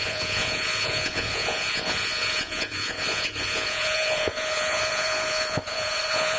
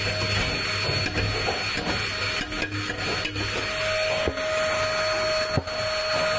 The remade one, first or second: first